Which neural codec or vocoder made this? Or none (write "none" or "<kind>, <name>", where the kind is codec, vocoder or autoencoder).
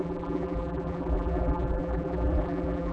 vocoder, BigVGAN v2